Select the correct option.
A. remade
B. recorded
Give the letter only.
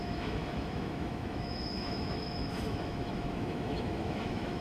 A